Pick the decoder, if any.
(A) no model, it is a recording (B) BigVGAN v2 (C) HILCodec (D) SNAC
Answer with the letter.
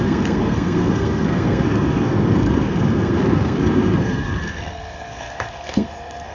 D